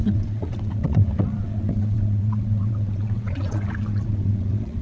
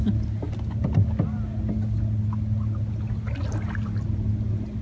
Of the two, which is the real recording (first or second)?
second